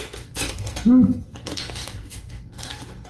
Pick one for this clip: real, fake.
fake